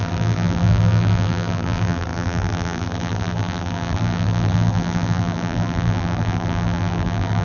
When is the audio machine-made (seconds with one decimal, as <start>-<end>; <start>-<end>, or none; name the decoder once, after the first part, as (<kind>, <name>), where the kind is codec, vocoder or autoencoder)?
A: 0.0-7.4 (vocoder, BigVGAN v2)